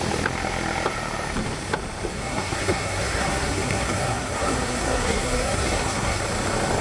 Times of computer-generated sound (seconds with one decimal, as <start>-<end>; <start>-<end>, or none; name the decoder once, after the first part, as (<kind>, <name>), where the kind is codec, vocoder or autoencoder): 2.1-6.2 (codec, SNAC)